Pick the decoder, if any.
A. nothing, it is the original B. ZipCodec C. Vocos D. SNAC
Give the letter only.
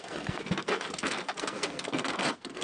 D